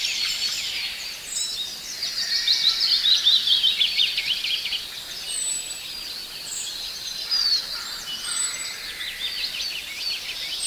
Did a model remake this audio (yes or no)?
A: no